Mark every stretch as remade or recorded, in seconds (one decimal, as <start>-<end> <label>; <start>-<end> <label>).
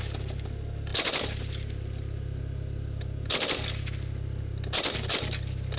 0.0-5.8 recorded